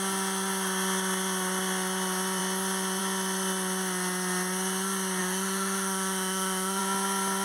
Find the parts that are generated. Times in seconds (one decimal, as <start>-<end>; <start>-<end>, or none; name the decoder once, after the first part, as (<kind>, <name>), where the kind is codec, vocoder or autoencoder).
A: 5.2-6.8 (autoencoder, DAC-VAE)